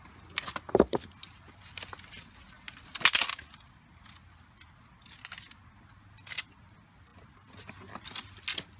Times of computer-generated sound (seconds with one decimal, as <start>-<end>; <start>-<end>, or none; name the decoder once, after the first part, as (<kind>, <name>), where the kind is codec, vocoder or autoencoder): none